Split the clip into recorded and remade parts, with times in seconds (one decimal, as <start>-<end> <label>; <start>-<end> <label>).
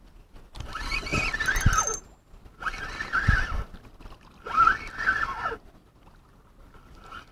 0.0-7.3 recorded